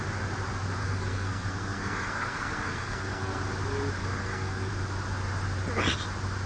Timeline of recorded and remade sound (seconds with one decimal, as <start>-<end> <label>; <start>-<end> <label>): 0.0-0.8 recorded; 0.8-3.4 remade; 3.4-4.0 recorded; 4.0-4.7 remade; 4.7-6.5 recorded